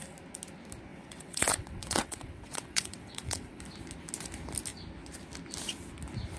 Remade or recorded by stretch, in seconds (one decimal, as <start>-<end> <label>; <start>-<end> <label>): 0.0-0.9 recorded; 0.9-3.6 remade; 3.6-6.4 recorded